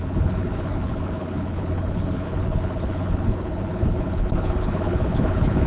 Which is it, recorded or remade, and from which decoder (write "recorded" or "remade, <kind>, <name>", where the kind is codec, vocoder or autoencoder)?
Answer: remade, codec, HILCodec